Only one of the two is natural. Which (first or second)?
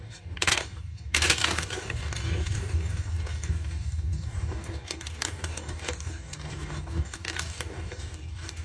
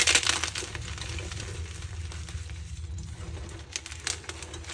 second